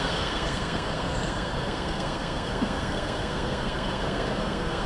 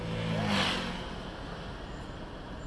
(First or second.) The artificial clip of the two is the first